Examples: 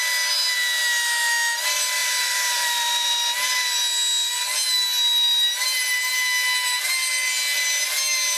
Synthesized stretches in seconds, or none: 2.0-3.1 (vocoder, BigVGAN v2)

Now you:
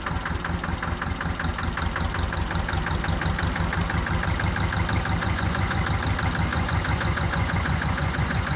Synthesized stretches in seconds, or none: 5.2-5.8 (vocoder, Vocos); 6.5-8.6

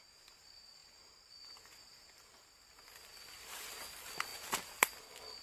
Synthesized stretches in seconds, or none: none

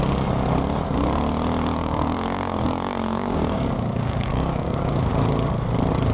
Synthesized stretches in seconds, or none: 1.8-5.1 (codec, DAC)

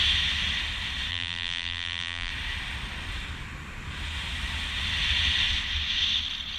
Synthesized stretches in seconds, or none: 1.1-2.3 (vocoder, BigVGAN v2)

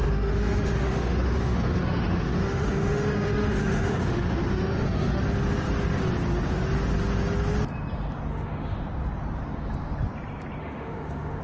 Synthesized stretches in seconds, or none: 0.0-5.2 (autoencoder, DAC-VAE); 8.3-8.8; 10.6-11.4